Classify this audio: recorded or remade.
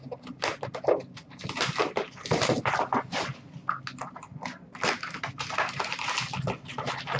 recorded